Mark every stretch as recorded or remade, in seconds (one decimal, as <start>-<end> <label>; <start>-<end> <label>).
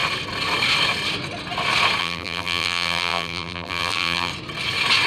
0.0-2.0 recorded; 2.0-4.3 remade; 4.3-5.1 recorded